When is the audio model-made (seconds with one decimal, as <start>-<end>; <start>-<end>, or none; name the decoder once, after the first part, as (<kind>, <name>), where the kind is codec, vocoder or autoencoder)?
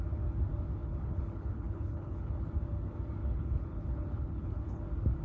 0.8-2.5 (codec, HILCodec); 3.2-4.8